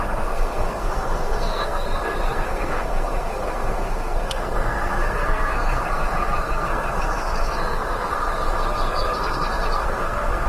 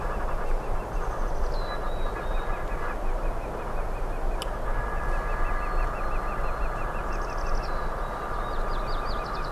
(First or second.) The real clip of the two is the second